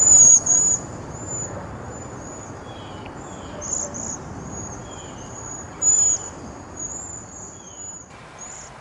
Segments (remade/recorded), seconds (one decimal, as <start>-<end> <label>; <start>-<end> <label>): 0.0-0.9 remade; 0.9-2.0 recorded; 2.0-8.8 remade